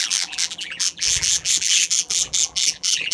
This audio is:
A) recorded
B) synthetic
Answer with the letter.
B